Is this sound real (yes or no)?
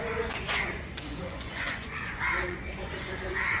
no